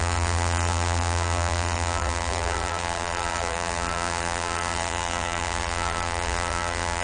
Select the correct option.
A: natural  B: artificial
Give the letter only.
B